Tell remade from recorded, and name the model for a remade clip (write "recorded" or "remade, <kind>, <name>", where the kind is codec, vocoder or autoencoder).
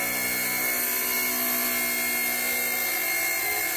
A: recorded